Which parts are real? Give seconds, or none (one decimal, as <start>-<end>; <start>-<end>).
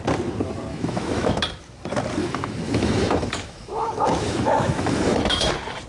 0.0-0.7; 1.4-2.2; 5.5-5.9